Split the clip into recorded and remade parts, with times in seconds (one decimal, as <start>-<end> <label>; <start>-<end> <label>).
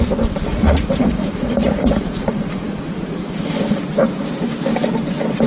0.0-0.5 recorded; 0.5-3.8 remade; 3.8-5.5 recorded